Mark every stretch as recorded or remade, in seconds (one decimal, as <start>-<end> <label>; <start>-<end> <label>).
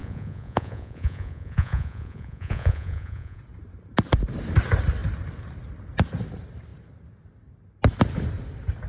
0.0-3.4 remade; 3.4-8.9 recorded